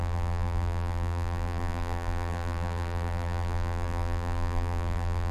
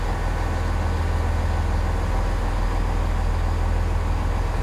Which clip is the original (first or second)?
second